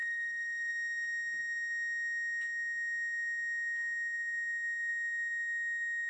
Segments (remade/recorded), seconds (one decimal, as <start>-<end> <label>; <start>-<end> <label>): 0.0-0.7 remade; 0.7-6.1 recorded